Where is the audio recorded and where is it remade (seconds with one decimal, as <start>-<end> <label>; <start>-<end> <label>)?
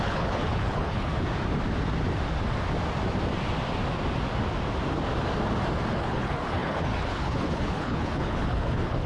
0.0-1.1 remade; 1.1-5.9 recorded; 5.9-9.1 remade